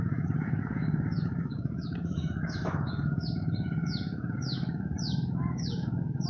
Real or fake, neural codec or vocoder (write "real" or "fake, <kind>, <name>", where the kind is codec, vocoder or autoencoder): fake, autoencoder, DAC-VAE